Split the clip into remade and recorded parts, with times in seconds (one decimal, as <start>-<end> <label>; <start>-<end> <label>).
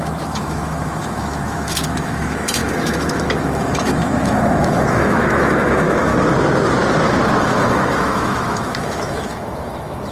0.0-6.1 remade; 6.1-7.4 recorded; 7.4-10.1 remade